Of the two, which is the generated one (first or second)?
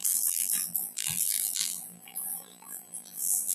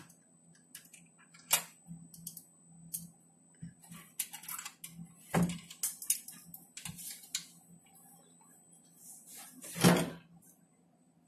first